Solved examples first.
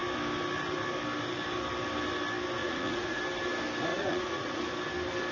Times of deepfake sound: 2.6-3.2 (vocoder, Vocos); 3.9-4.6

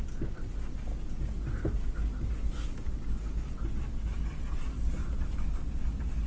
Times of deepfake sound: none